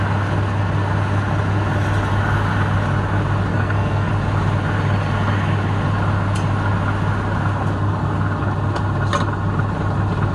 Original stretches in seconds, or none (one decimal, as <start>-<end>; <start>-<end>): 0.0-3.5; 4.1-10.3